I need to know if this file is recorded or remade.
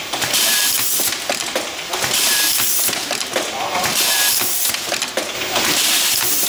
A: recorded